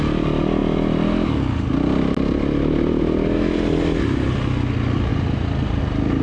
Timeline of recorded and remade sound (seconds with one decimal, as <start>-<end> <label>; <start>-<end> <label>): 0.0-6.2 recorded